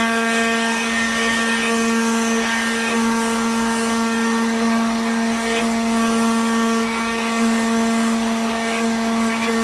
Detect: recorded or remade remade